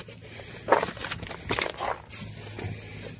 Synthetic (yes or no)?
no